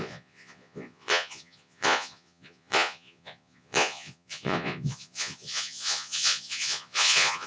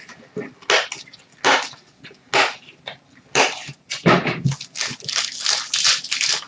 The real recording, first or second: second